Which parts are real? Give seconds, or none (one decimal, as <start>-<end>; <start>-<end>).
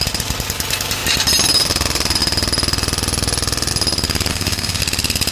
0.0-4.3; 4.8-5.3